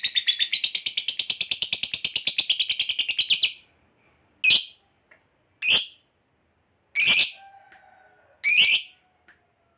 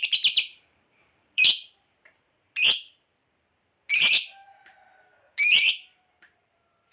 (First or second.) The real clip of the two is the first